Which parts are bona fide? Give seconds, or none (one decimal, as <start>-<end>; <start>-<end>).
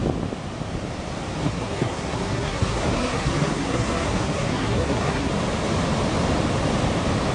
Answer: 0.0-1.4; 5.3-7.3